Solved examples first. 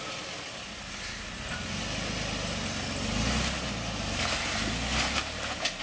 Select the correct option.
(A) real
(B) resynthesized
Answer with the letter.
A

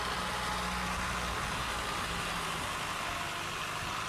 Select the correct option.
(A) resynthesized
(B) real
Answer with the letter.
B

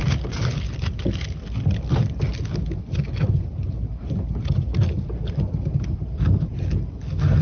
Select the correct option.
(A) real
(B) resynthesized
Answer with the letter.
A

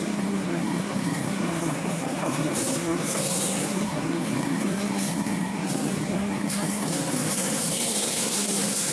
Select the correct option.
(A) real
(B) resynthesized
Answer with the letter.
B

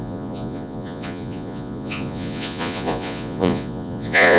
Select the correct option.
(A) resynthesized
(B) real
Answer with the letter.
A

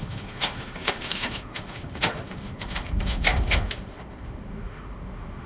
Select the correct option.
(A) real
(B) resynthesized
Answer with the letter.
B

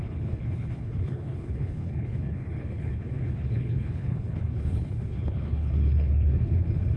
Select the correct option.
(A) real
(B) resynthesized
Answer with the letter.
B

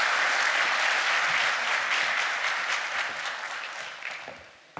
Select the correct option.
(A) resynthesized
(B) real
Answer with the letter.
A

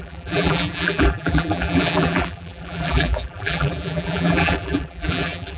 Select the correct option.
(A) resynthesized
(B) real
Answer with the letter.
A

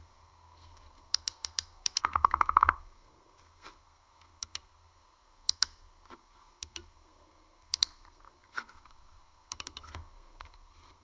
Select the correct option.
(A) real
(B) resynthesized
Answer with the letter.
B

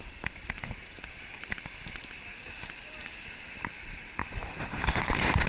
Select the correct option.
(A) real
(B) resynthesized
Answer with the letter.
B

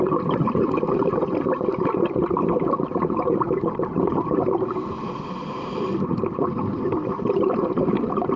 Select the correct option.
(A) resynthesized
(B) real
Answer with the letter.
B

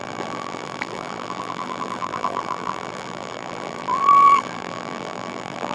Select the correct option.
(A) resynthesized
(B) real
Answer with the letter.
A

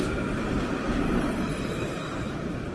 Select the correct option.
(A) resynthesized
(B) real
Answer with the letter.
A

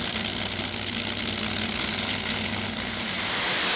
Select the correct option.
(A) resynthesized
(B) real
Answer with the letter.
B